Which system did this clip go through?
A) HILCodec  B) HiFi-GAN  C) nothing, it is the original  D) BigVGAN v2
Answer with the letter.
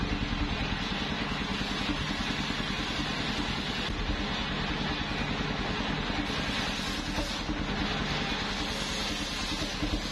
C